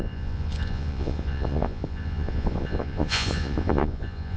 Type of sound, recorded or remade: remade